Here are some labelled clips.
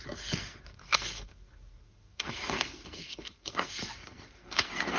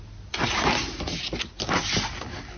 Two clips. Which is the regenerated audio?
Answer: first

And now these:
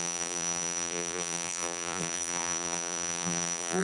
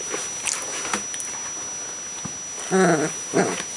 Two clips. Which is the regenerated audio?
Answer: first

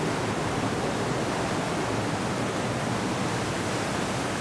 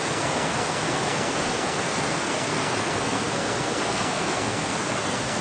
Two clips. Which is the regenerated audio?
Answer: second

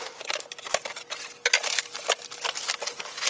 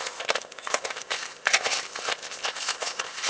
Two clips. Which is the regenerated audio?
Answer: second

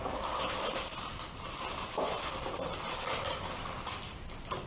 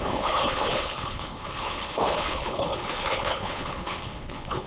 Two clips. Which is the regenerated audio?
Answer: second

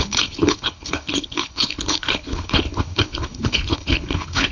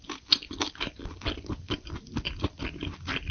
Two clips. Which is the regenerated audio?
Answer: first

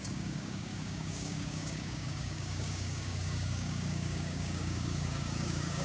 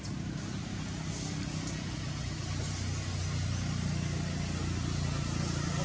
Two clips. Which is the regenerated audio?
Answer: first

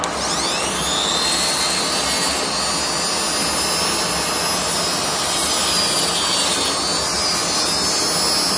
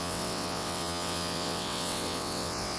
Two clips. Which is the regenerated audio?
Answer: second